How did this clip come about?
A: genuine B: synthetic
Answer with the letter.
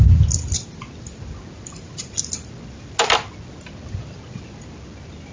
A